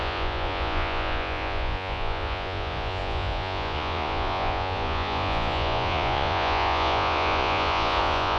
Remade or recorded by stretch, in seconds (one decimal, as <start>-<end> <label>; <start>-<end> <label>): 0.0-8.4 remade